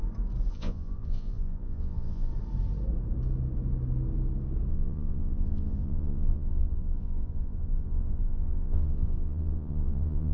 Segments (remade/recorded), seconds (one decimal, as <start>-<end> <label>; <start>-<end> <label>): 0.0-0.5 recorded; 0.5-2.3 remade; 2.3-4.7 recorded; 4.7-10.3 remade